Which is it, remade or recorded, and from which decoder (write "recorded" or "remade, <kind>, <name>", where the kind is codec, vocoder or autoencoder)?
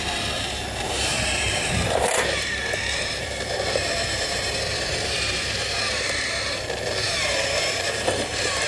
remade, vocoder, BigVGAN v2